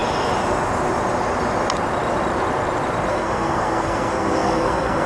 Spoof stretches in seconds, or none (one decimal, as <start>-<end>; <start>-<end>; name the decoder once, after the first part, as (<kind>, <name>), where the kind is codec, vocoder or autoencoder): 3.1-5.1 (codec, SNAC)